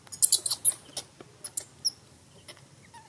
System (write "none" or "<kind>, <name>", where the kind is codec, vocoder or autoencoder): none